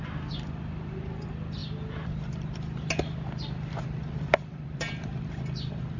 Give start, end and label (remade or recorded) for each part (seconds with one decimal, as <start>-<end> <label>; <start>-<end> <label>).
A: 0.0-6.0 recorded